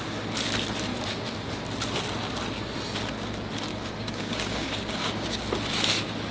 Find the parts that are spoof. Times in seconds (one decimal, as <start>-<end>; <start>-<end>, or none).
3.7-5.4